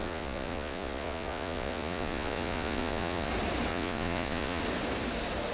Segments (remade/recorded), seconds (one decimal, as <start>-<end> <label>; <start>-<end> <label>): 0.0-3.3 remade; 3.3-3.7 recorded; 3.7-4.6 remade; 4.6-5.5 recorded